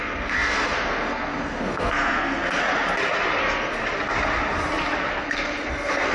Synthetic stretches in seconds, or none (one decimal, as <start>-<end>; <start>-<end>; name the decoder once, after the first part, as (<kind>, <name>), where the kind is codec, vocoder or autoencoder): 0.0-2.6 (codec, SNAC); 3.4-3.8; 5.1-6.1